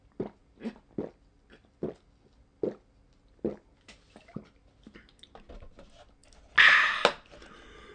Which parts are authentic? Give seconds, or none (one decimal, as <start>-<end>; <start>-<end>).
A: 0.0-7.9